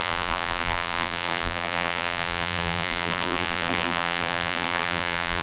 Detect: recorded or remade remade